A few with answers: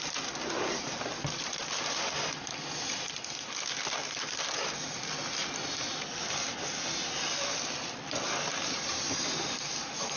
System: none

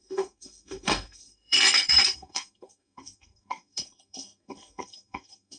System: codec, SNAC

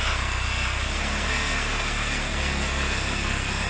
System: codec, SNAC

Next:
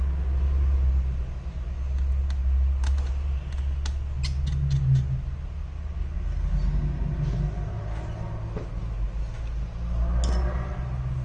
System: none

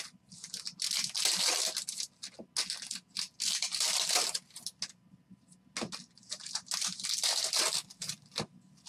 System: none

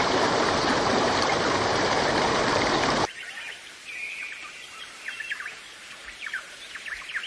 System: vocoder, BigVGAN v2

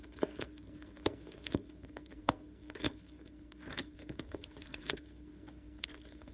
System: codec, SNAC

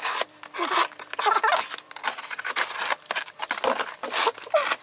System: vocoder, BigVGAN v2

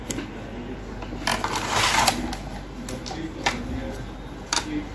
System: none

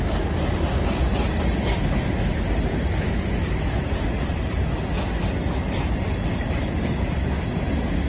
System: none